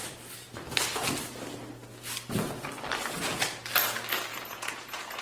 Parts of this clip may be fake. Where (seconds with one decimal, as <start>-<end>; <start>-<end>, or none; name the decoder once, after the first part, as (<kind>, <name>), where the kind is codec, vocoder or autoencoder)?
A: 4.3-5.2 (vocoder, Vocos)